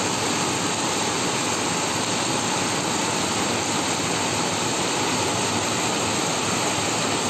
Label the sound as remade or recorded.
recorded